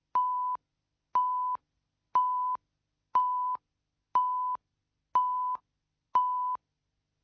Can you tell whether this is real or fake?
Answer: real